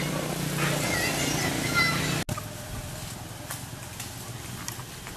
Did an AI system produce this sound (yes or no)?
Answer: no